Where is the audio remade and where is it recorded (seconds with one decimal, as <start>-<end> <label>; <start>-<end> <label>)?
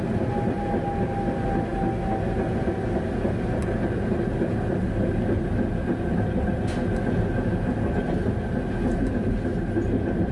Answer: 0.0-10.3 recorded